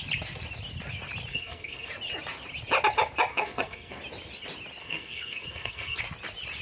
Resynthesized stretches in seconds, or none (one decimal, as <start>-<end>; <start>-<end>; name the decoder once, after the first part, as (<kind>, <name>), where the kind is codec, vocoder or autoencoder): 1.3-1.9 (codec, SNAC); 3.3-4.0; 4.8-6.0